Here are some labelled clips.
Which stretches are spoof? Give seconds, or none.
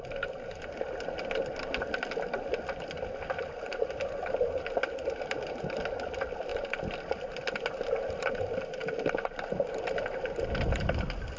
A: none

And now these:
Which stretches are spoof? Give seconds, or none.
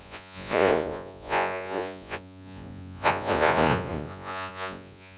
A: 0.0-5.2 (vocoder, Vocos)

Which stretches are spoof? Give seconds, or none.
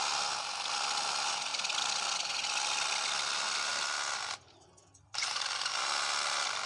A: none